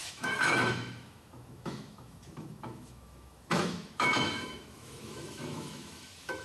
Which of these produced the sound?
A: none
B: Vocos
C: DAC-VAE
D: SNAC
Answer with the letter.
C